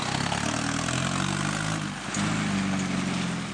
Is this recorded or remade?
recorded